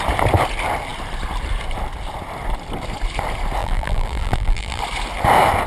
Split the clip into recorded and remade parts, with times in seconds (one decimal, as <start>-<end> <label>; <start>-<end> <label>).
0.0-3.6 recorded; 3.6-4.8 remade; 4.8-5.7 recorded